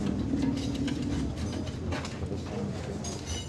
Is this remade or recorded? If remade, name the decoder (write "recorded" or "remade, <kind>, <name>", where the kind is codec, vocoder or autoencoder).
recorded